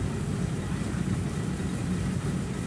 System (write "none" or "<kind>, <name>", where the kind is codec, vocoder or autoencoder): vocoder, BigVGAN v2